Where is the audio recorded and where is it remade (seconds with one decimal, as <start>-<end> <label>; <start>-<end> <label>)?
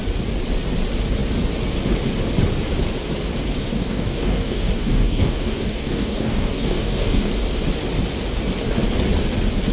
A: 0.0-3.6 recorded; 3.6-7.3 remade; 7.3-9.7 recorded